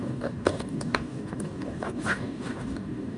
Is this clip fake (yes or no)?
yes